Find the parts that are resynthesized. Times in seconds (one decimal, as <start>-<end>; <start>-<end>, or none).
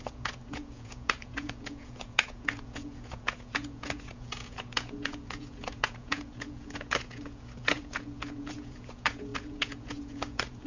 0.0-10.7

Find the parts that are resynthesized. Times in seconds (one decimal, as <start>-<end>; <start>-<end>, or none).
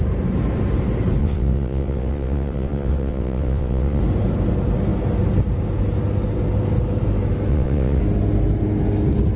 1.2-4.0; 7.5-8.0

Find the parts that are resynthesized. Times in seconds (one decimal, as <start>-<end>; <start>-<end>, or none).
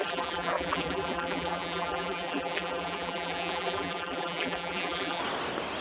0.0-5.2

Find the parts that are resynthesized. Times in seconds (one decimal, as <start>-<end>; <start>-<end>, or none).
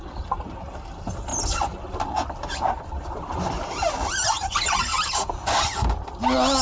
none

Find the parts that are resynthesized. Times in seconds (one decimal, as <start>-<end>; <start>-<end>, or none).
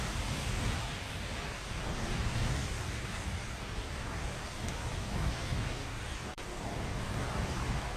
0.0-8.0